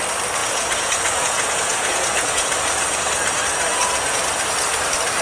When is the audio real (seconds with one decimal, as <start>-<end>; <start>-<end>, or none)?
0.0-0.4; 2.6-3.7; 4.2-5.2